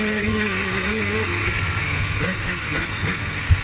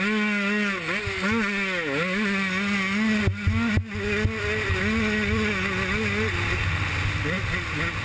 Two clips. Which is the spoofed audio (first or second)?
first